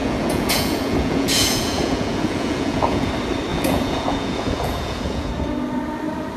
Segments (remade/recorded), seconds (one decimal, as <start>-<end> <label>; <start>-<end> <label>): 0.0-3.1 remade; 3.1-3.5 recorded; 3.5-5.3 remade; 5.3-6.4 recorded